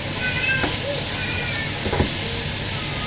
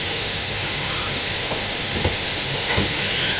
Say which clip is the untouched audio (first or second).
first